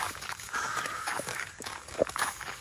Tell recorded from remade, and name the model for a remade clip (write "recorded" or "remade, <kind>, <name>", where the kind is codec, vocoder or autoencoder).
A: remade, codec, DAC